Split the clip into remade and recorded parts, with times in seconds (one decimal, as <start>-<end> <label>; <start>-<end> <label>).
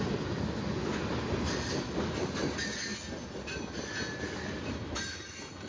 0.0-5.7 recorded